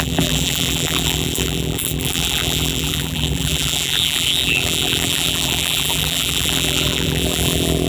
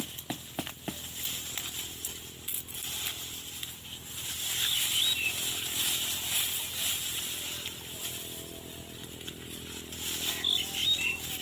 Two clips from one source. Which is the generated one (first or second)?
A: first